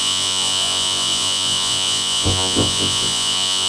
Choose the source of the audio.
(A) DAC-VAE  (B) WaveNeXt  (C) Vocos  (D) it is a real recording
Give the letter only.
C